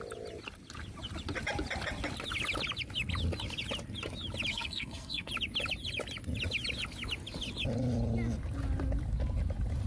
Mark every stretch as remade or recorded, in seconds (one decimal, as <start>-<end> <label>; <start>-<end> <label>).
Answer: 0.0-4.5 recorded; 4.5-5.3 remade; 5.3-9.9 recorded